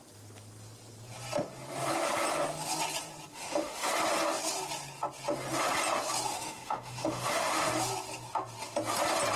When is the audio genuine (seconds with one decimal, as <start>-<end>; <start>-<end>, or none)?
0.0-3.3; 3.9-6.3; 7.7-9.4